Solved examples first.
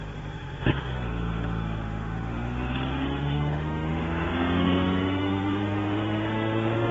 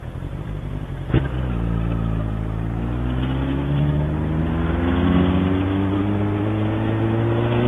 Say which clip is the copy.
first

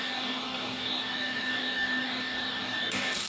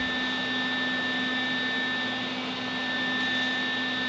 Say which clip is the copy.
first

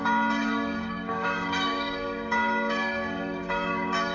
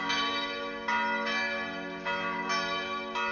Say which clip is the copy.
first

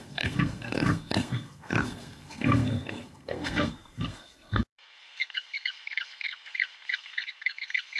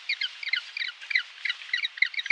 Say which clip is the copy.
first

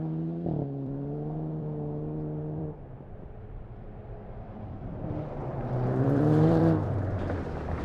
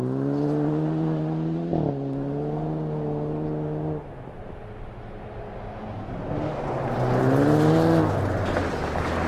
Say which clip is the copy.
first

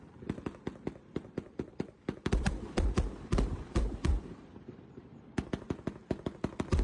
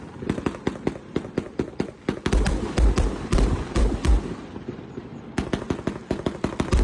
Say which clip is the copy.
first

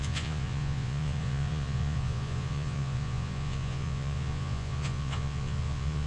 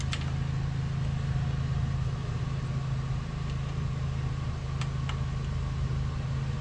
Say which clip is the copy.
first